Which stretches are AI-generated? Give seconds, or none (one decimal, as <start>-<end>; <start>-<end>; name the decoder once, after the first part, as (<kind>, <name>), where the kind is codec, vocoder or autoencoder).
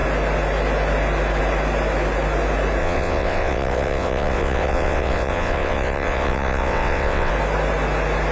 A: 2.8-7.3 (vocoder, WaveNeXt)